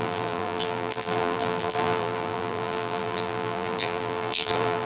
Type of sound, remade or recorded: remade